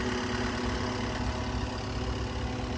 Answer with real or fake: real